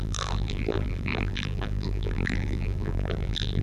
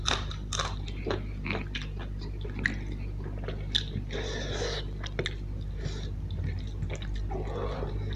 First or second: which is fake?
first